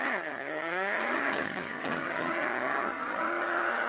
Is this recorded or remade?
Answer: remade